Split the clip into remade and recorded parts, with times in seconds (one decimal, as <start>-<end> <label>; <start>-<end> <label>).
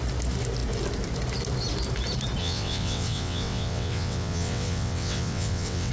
0.0-2.4 recorded; 2.4-5.9 remade